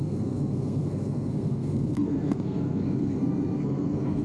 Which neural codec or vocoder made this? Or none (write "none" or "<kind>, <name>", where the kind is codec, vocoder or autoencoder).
codec, SNAC